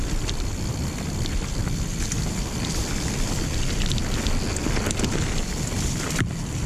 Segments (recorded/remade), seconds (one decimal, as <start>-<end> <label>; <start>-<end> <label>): 0.0-6.7 recorded